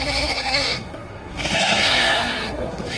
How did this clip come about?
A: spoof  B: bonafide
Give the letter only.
A